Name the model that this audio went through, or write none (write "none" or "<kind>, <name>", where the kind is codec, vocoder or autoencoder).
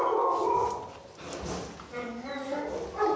none